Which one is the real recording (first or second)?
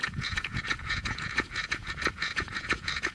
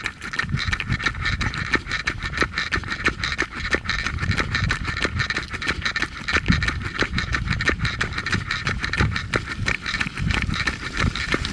second